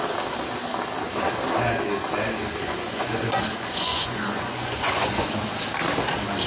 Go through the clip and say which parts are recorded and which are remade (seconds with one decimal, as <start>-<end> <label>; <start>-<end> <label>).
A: 0.0-2.6 recorded; 2.6-5.4 remade; 5.4-6.5 recorded